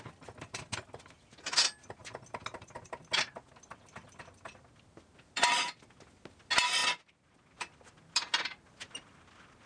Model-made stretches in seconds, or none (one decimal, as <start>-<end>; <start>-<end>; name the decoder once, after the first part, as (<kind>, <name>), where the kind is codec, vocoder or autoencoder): none